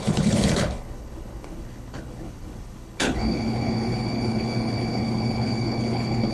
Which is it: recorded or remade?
remade